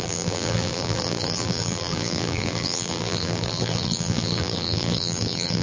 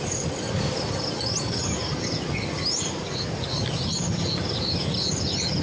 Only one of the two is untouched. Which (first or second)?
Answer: second